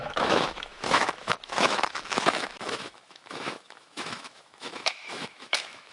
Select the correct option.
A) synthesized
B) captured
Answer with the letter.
A